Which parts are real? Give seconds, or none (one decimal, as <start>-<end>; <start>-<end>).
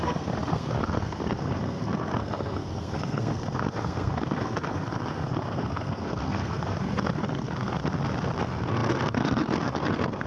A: 7.8-8.4